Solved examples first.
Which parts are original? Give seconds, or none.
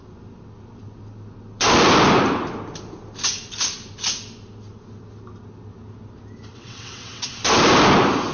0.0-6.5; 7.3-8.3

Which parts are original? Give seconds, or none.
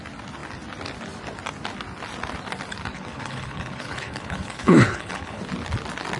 0.0-2.9; 5.4-6.2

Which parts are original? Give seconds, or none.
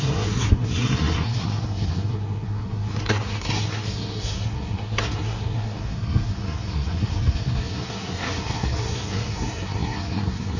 none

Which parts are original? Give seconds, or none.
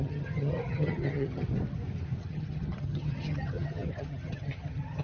1.4-2.2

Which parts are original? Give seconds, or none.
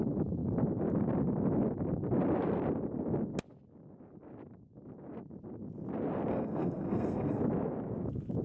0.0-6.3; 7.4-8.4